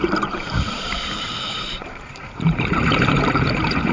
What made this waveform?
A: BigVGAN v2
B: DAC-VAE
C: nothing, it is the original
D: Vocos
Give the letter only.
A